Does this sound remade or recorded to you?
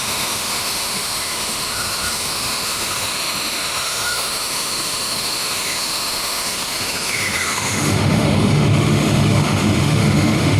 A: remade